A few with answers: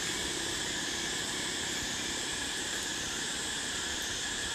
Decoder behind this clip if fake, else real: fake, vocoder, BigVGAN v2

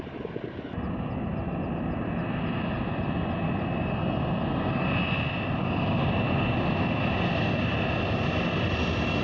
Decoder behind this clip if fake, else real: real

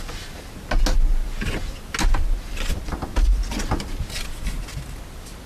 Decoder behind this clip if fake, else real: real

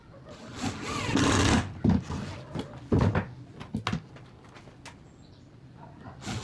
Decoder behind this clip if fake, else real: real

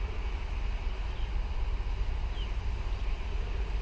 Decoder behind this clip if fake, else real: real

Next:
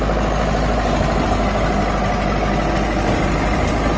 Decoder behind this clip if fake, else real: real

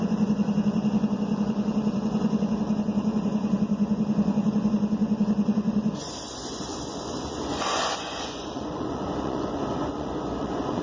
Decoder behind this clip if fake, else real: fake, vocoder, Vocos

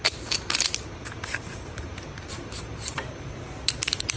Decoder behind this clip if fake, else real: fake, vocoder, BigVGAN v2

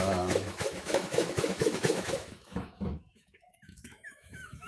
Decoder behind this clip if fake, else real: fake, autoencoder, DAC-VAE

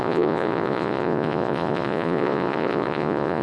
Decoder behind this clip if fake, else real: fake, vocoder, Vocos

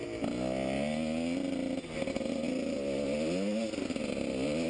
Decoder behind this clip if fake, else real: real